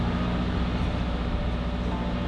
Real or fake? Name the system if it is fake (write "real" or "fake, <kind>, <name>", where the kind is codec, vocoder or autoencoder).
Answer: real